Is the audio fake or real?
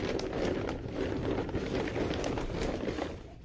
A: real